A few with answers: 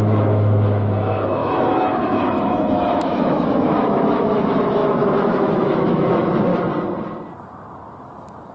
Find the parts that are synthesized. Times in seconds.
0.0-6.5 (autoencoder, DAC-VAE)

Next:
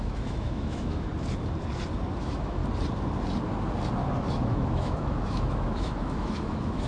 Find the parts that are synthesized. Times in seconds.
0.0-1.1 (autoencoder, DAC-VAE); 2.2-2.6; 4.3-6.9

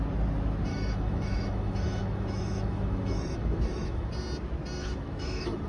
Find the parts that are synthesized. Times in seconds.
0.7-4.1 (autoencoder, DAC-VAE); 4.8-5.7